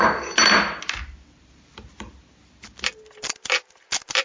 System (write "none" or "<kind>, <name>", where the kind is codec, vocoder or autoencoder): none